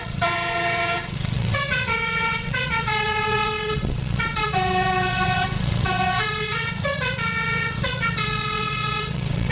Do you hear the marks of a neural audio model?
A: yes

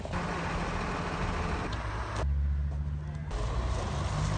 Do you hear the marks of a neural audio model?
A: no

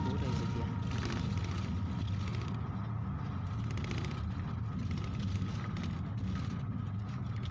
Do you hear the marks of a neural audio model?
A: no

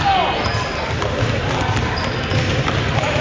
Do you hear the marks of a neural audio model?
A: no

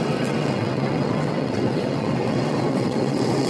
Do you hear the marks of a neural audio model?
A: yes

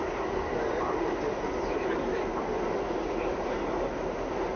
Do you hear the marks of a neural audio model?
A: no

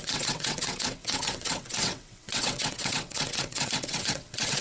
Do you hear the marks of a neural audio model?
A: yes